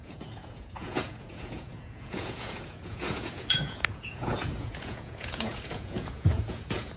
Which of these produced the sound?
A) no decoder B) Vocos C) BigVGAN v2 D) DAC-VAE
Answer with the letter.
B